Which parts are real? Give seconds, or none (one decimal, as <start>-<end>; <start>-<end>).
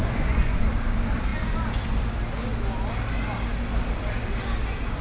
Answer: 0.6-5.0